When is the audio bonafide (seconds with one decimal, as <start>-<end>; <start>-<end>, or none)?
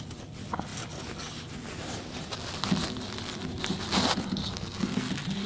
0.0-4.5; 5.1-5.5